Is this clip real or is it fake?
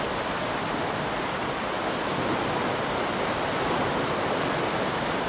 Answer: real